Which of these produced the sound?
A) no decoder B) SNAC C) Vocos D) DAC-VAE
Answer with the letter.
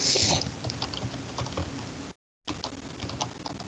A